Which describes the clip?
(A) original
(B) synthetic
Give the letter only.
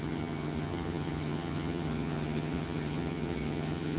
B